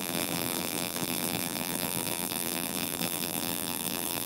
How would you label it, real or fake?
fake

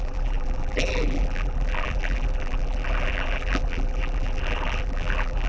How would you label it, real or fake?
fake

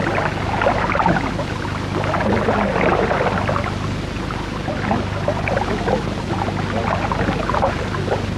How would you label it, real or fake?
real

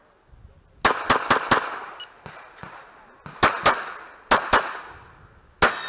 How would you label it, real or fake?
real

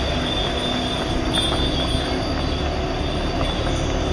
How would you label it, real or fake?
real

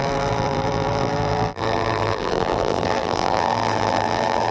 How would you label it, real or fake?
fake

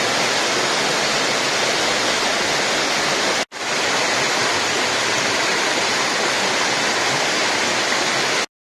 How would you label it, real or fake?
real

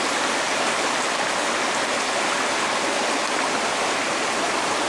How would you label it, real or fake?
real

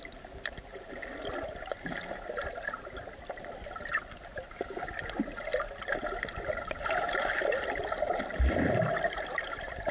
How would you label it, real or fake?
real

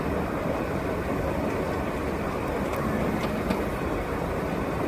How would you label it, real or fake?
fake